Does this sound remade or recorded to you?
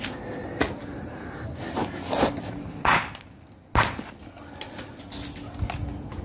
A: recorded